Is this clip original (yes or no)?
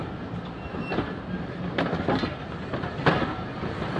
yes